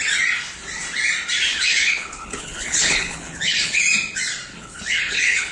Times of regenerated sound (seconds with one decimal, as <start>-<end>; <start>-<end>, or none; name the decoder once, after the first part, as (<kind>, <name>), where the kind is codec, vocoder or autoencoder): 1.5-3.8 (codec, HILCodec); 4.5-5.5